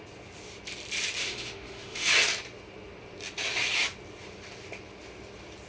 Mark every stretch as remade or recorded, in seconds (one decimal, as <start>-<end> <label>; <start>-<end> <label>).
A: 0.0-1.2 recorded; 1.2-2.1 remade; 2.1-5.7 recorded